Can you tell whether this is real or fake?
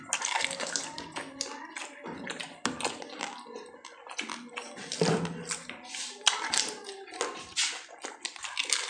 real